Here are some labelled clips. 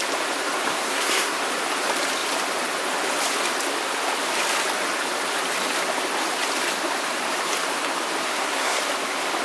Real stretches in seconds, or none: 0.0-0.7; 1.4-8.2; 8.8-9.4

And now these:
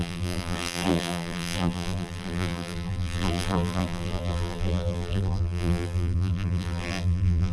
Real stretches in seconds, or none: none

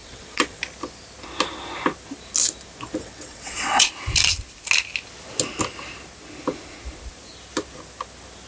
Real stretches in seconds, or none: 0.6-3.0; 3.9-8.5